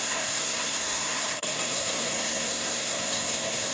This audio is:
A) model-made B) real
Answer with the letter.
A